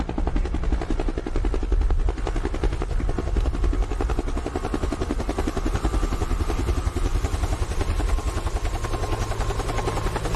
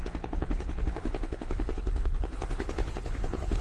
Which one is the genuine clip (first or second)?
first